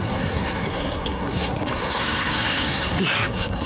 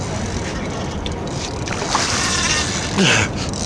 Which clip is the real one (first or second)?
second